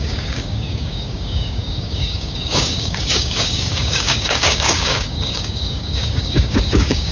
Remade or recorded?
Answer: remade